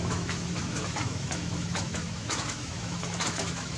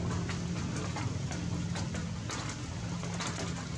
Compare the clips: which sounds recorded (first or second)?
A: second